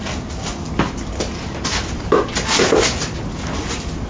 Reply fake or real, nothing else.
real